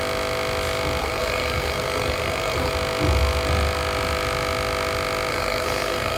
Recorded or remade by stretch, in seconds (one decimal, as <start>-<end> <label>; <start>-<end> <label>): 0.0-1.0 recorded; 1.0-2.7 remade; 2.7-5.3 recorded; 5.3-6.2 remade